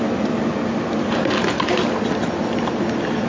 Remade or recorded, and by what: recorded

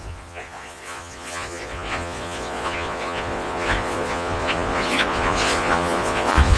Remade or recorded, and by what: remade, vocoder, Vocos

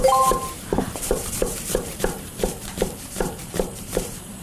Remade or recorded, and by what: remade, vocoder, BigVGAN v2